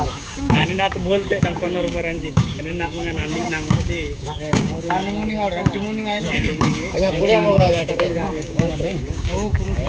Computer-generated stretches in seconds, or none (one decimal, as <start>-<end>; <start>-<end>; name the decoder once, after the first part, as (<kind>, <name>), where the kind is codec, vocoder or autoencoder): 0.0-9.9 (codec, DAC)